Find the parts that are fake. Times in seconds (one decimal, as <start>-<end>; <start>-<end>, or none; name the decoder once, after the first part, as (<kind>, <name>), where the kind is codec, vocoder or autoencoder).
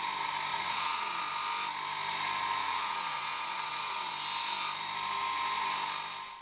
0.5-1.2 (vocoder, Vocos); 2.6-4.1